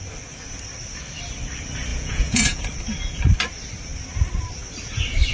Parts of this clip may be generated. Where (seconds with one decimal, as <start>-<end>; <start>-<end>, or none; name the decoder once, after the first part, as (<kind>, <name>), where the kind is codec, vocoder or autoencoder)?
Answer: 1.9-2.6 (vocoder, Vocos)